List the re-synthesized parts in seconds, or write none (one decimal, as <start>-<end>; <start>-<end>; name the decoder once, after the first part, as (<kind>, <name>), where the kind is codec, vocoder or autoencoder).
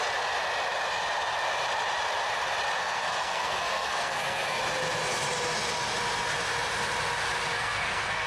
2.8-4.6 (codec, SNAC); 7.5-8.3